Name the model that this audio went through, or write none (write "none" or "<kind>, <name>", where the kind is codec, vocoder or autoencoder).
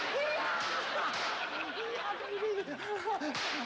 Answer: none